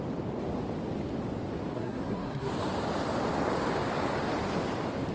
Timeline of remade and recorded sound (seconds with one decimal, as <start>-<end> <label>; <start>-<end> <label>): 0.0-1.7 recorded; 1.7-2.5 remade; 2.5-5.1 recorded

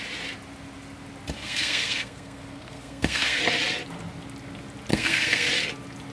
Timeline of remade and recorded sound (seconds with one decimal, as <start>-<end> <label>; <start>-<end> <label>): 0.0-1.4 recorded; 1.4-3.4 remade; 3.4-4.9 recorded; 4.9-5.5 remade; 5.5-6.1 recorded